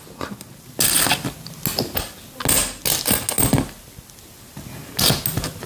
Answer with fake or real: real